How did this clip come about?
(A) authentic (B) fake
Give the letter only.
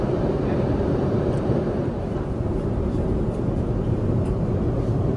B